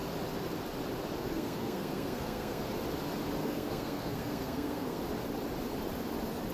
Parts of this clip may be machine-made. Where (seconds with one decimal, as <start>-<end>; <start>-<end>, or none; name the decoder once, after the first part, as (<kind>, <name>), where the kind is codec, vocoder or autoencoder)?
1.2-2.6 (codec, SNAC); 3.4-5.0